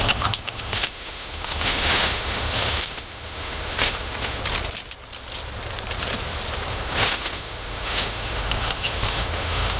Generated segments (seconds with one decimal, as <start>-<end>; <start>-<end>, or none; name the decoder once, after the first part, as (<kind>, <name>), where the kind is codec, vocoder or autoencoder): 0.0-4.4 (autoencoder, DAC-VAE); 6.7-9.8